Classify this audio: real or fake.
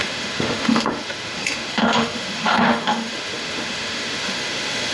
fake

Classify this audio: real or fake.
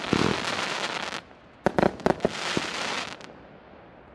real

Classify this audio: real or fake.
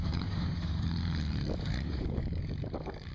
fake